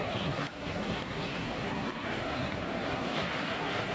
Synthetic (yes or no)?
yes